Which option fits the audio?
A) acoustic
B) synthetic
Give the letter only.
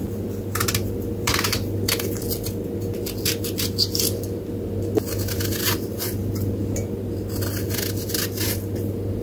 A